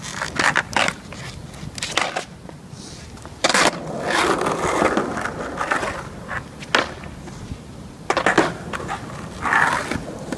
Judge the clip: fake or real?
real